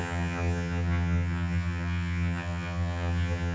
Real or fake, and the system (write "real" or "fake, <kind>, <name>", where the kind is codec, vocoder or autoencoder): fake, vocoder, HiFi-GAN